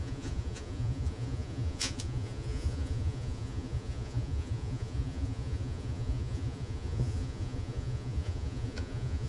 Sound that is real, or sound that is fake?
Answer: fake